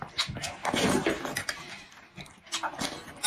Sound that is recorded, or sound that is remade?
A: recorded